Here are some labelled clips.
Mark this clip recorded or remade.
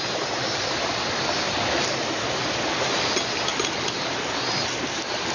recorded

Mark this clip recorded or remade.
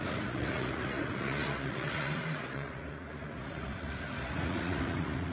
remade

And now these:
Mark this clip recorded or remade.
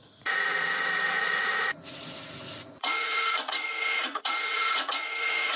remade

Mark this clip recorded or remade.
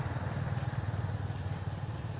recorded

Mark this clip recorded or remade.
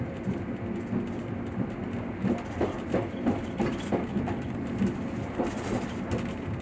recorded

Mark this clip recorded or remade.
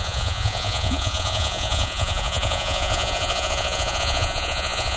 remade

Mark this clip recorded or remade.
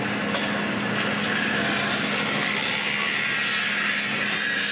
recorded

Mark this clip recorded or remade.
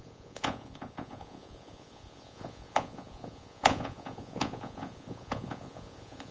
remade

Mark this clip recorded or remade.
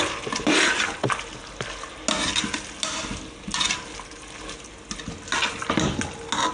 recorded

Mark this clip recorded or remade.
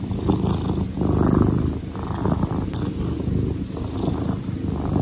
recorded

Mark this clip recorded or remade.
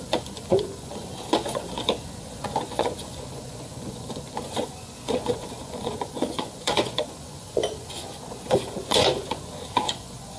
remade